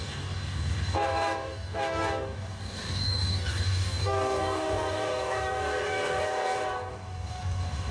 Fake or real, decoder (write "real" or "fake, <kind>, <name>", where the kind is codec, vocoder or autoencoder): fake, codec, DAC